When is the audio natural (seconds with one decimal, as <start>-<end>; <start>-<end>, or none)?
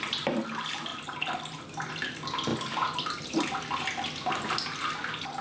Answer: 0.0-5.4